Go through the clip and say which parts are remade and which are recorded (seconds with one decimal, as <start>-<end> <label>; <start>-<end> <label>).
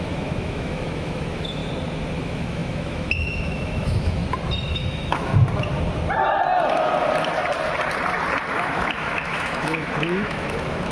0.0-1.6 remade; 1.6-2.2 recorded; 2.2-4.2 remade; 4.2-4.7 recorded; 4.7-5.3 remade; 5.3-8.5 recorded; 8.5-10.9 remade